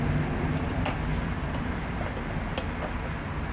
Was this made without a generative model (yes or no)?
yes